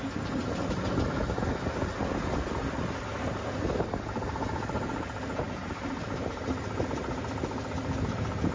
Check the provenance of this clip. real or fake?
real